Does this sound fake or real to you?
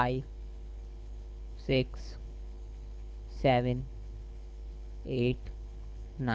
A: fake